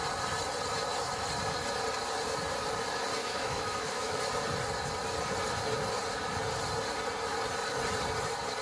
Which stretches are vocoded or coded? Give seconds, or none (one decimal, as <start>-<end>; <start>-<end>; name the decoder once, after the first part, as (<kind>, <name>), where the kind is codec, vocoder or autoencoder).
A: 3.2-4.2 (autoencoder, DAC-VAE)